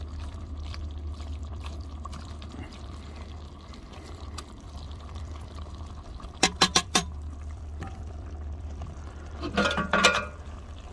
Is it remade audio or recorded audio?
remade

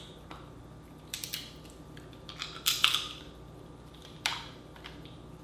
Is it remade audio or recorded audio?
remade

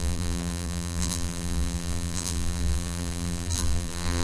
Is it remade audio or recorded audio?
remade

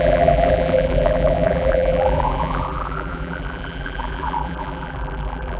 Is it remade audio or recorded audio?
remade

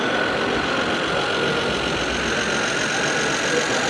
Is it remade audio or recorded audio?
recorded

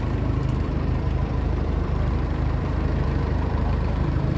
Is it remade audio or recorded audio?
remade